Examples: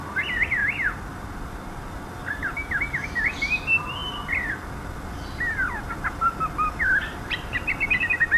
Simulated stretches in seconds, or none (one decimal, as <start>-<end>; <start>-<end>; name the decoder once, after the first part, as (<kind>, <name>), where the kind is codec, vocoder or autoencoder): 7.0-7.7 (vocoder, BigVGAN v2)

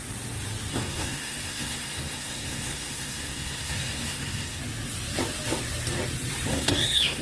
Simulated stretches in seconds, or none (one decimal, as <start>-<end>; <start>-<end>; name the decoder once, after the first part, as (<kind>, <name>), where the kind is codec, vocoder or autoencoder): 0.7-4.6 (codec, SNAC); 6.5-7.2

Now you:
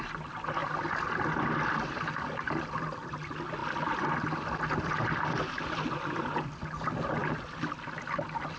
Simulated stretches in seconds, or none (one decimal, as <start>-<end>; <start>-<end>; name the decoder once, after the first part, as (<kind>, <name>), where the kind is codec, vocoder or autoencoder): none

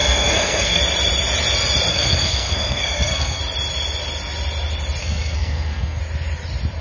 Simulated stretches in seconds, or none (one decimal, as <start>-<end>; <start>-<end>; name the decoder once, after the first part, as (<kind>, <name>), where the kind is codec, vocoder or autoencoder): 0.0-0.8 (codec, SNAC); 1.9-3.4; 5.0-6.0

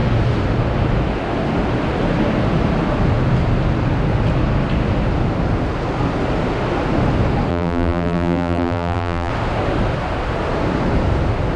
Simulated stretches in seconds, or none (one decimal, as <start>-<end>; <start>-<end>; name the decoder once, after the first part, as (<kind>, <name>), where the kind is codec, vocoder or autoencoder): 7.5-9.3 (vocoder, BigVGAN v2)

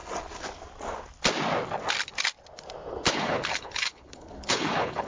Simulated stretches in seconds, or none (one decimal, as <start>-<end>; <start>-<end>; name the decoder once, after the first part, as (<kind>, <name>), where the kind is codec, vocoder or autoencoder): 3.1-5.1 (codec, HILCodec)